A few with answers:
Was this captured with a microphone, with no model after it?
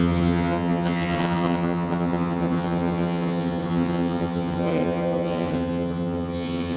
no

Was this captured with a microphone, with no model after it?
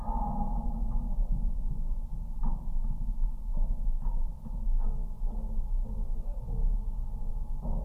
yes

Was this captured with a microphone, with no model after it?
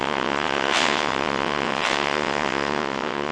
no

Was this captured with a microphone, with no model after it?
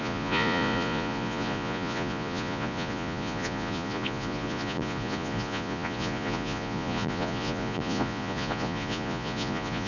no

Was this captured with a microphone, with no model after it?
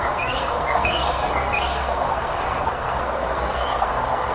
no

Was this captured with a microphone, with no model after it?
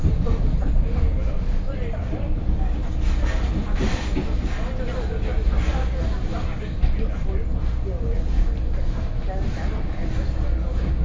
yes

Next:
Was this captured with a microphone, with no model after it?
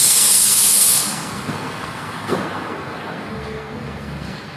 no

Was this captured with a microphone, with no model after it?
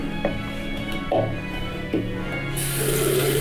yes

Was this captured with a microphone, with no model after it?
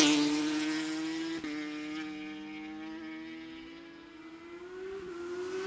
yes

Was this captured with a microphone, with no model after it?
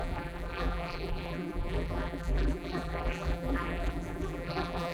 no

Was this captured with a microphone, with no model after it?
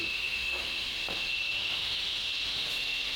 no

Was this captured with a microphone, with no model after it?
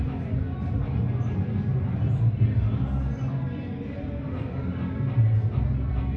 yes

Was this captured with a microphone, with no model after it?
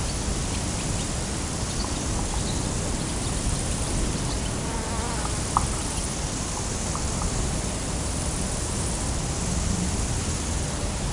yes